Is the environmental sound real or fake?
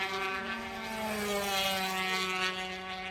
real